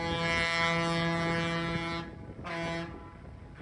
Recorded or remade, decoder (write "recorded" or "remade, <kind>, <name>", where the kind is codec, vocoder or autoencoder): recorded